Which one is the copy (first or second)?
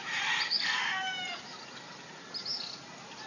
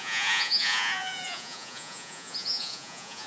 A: second